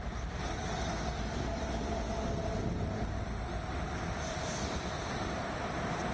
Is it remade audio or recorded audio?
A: recorded